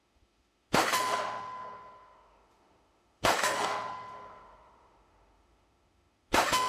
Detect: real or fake fake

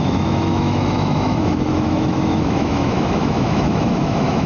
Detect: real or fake fake